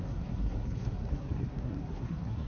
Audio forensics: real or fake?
fake